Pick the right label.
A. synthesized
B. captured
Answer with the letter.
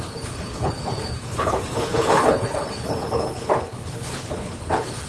A